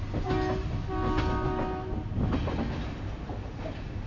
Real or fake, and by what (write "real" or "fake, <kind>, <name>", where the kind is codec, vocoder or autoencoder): real